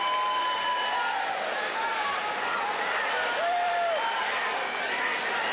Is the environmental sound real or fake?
fake